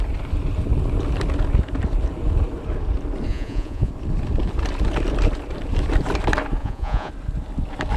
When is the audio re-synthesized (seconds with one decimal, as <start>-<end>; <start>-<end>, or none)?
3.3-3.9; 6.6-7.1